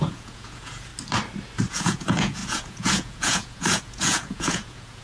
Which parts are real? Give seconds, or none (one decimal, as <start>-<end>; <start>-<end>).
0.9-1.7